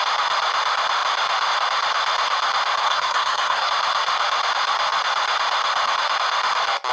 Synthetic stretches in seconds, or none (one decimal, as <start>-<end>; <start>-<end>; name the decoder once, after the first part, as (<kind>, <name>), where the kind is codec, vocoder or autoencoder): 2.8-3.7 (codec, SNAC)

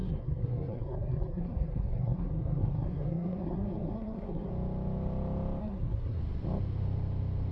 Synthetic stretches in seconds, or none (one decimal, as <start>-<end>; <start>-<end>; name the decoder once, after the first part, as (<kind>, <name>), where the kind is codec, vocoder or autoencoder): 0.0-4.5 (codec, SNAC); 5.6-6.2

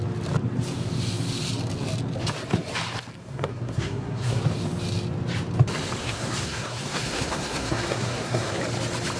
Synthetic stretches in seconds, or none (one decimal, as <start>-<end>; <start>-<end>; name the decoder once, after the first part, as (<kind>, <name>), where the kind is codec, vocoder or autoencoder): 3.2-4.4 (codec, SNAC); 6.0-8.6

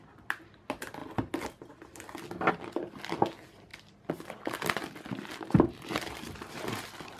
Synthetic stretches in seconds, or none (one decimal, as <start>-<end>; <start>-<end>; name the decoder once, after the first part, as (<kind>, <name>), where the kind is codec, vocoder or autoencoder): none